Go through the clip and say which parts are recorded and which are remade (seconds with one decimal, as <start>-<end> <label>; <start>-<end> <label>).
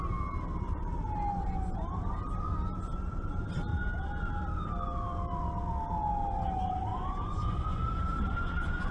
0.0-3.7 recorded; 3.7-4.4 remade; 4.4-6.9 recorded; 6.9-8.9 remade